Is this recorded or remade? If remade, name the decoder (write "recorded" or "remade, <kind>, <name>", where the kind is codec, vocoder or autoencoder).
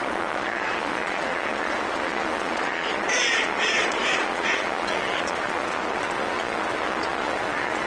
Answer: remade, vocoder, Vocos